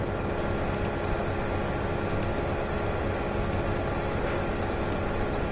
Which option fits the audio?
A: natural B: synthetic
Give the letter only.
A